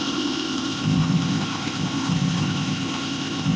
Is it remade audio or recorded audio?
remade